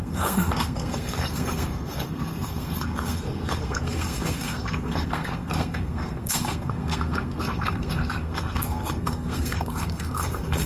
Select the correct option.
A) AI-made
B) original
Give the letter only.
A